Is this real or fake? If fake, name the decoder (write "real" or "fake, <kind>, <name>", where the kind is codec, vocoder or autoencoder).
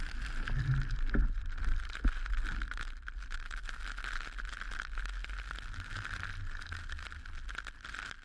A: real